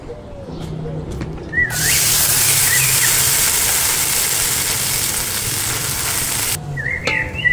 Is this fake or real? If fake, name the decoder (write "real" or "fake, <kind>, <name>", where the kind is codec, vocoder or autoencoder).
real